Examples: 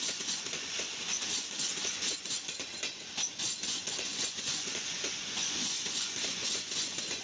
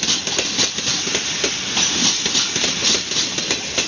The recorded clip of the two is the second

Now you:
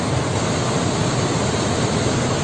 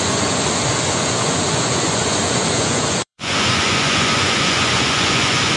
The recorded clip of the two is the first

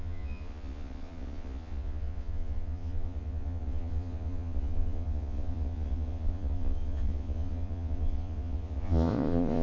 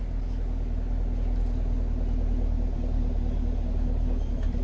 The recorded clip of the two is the second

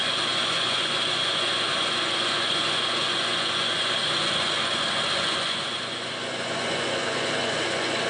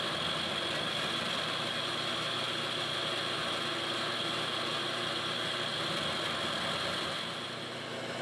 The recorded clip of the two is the second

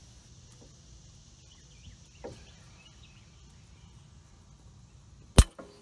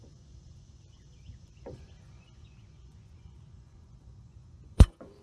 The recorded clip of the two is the first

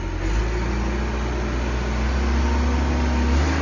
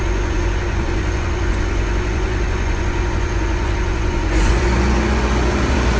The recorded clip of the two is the first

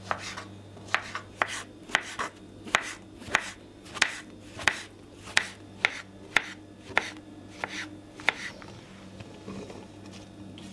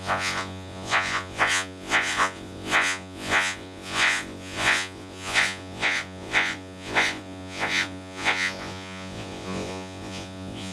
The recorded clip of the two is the first